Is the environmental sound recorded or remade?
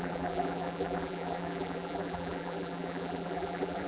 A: remade